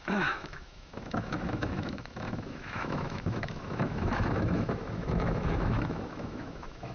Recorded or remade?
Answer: remade